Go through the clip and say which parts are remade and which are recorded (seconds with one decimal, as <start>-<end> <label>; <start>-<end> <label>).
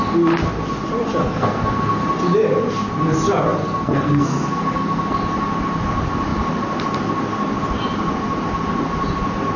0.0-1.2 recorded; 1.2-2.1 remade; 2.1-3.6 recorded; 3.6-5.2 remade; 5.2-9.6 recorded